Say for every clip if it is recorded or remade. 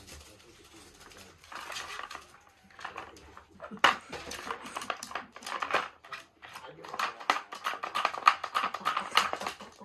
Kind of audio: recorded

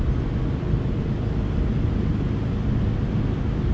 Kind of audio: recorded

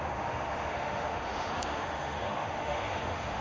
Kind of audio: remade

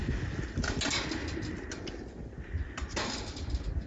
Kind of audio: recorded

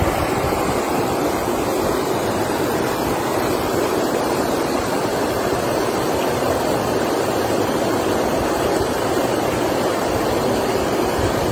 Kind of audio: recorded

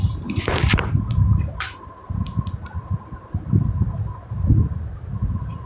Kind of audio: remade